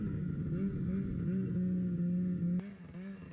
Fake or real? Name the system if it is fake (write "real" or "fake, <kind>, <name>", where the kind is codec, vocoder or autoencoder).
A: real